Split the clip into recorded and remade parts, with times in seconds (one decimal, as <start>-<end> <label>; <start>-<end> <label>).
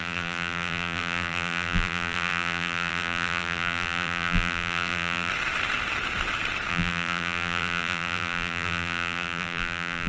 0.0-5.3 remade; 5.3-6.7 recorded; 6.7-10.1 remade